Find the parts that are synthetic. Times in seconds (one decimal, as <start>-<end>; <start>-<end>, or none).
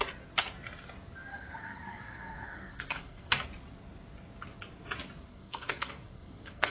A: 1.3-3.3; 5.3-6.7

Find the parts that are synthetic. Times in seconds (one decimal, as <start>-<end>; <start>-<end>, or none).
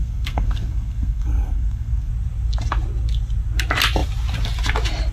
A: 0.0-2.1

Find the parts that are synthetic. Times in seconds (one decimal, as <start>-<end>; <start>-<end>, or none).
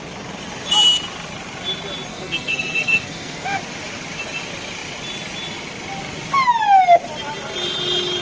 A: 2.1-3.6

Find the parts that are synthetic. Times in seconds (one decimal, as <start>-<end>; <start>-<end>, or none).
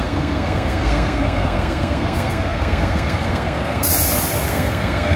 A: 0.0-3.9; 4.5-5.2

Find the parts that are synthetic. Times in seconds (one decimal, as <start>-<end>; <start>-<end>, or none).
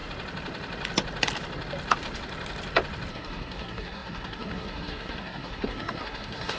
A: 3.1-6.6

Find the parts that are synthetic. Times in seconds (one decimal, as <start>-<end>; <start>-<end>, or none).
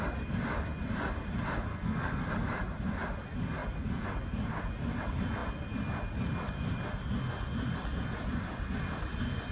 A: 1.7-2.3